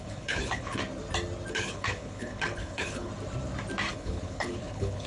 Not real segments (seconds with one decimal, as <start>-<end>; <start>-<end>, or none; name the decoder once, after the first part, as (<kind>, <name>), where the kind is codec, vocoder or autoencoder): 0.0-0.8 (codec, HILCodec); 1.5-3.1; 3.9-5.1